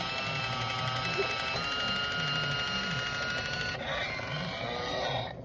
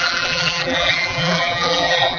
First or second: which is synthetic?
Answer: second